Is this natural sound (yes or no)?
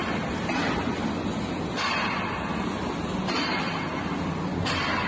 yes